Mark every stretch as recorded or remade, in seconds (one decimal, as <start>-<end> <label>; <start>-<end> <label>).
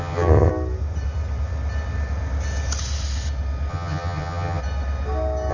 0.0-0.5 remade; 0.5-3.7 recorded; 3.7-4.6 remade; 4.6-5.5 recorded